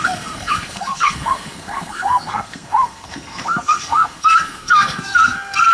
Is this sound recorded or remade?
remade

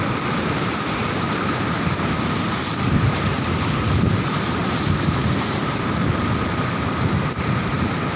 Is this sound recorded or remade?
remade